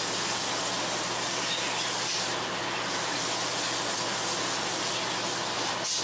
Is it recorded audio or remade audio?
recorded